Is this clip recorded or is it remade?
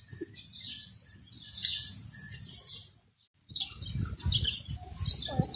recorded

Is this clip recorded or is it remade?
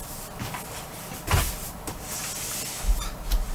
recorded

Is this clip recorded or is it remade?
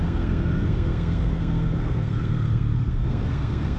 remade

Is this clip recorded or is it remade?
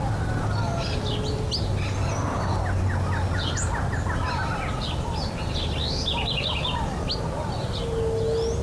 recorded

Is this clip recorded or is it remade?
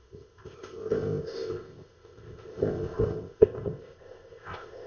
remade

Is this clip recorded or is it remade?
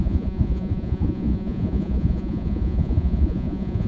remade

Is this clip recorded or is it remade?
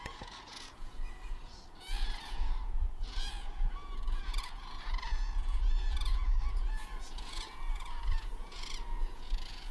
remade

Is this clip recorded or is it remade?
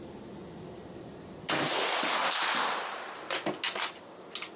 recorded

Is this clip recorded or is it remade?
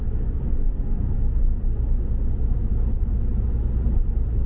recorded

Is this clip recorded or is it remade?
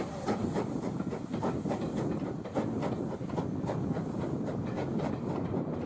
recorded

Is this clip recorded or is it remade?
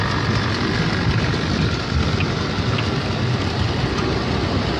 recorded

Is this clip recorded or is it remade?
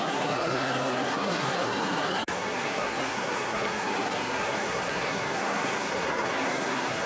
remade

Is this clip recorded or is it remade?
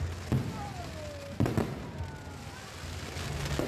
recorded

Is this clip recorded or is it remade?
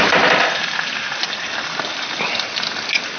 recorded